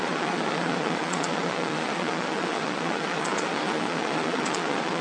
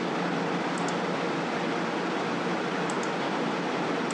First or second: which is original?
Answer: second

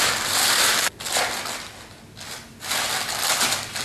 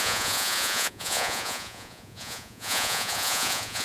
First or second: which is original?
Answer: first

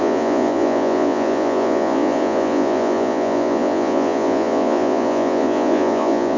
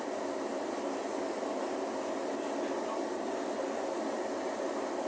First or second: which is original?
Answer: second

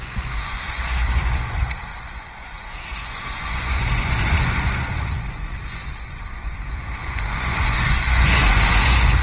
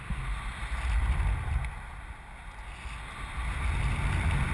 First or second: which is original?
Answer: second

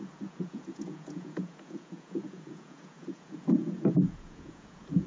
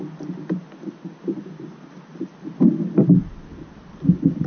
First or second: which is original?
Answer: second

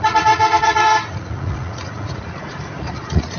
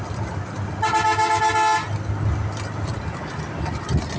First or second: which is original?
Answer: second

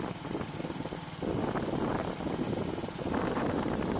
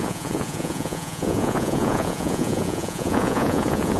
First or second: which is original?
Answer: first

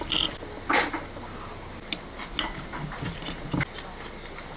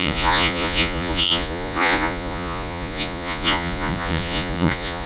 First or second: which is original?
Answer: first